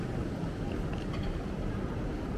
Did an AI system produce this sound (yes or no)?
no